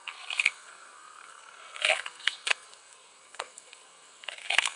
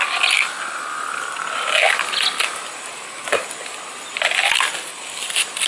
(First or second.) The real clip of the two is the second